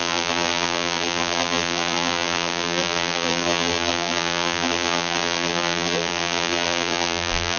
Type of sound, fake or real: fake